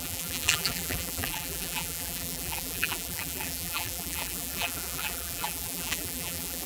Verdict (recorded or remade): remade